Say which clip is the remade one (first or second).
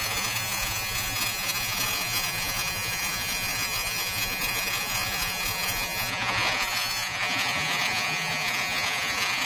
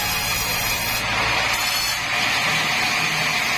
first